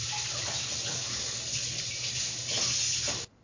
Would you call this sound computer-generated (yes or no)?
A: no